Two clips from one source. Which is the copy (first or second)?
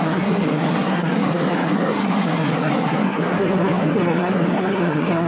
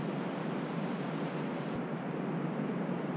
first